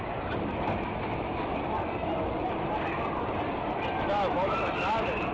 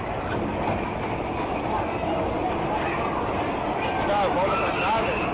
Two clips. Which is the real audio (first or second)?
second